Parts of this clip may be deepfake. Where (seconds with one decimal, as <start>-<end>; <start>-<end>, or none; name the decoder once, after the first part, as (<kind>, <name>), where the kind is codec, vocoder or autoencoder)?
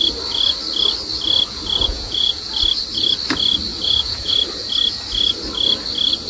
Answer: 1.9-2.5 (vocoder, Vocos); 3.7-4.3